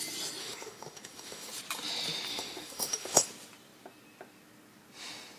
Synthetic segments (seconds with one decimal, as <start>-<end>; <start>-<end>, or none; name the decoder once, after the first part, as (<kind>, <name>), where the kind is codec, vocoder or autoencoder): 0.4-1.5 (autoencoder, DAC-VAE); 2.3-3.2